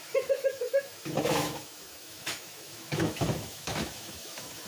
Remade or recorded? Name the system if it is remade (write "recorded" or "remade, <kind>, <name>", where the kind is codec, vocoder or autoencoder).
remade, autoencoder, DAC-VAE